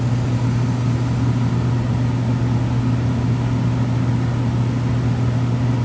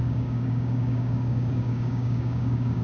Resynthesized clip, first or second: second